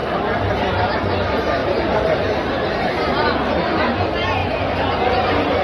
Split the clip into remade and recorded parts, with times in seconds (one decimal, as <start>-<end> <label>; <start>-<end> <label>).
0.0-1.6 recorded; 1.6-3.5 remade; 3.5-5.6 recorded